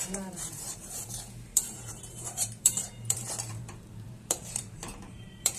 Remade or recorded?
remade